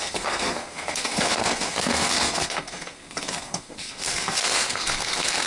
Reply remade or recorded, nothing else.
remade